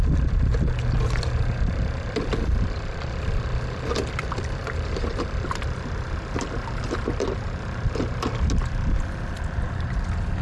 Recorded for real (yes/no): yes